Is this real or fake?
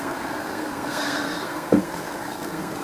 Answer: fake